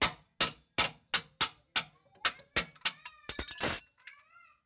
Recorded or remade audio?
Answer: recorded